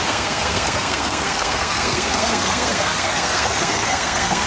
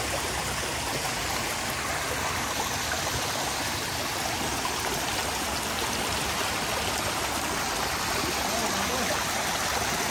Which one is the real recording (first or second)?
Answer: second